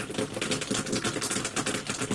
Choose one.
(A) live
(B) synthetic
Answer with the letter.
A